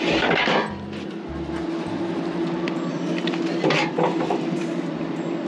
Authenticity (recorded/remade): remade